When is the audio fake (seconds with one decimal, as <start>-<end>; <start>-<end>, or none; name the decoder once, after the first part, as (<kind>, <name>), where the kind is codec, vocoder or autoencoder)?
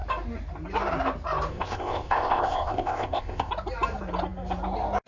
1.5-3.5 (codec, ZipCodec)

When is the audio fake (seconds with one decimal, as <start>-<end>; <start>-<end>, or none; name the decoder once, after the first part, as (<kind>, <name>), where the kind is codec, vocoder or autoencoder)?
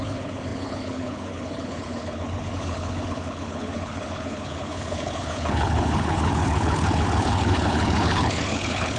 0.0-9.0 (codec, HILCodec)